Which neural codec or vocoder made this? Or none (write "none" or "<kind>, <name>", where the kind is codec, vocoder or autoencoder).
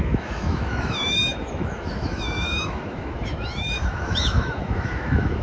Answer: autoencoder, DAC-VAE